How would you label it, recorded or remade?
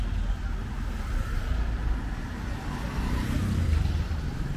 recorded